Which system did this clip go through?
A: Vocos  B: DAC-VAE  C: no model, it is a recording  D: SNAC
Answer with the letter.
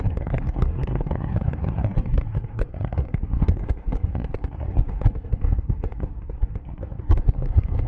D